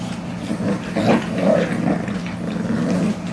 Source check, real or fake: real